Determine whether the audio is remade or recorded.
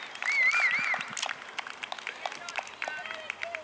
recorded